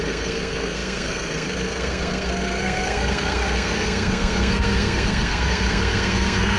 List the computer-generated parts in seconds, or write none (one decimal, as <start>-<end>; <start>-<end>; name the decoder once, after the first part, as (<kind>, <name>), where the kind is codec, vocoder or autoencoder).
0.0-6.6 (codec, SNAC)